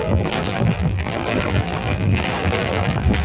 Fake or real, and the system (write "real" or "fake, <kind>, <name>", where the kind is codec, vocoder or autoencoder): fake, vocoder, BigVGAN v2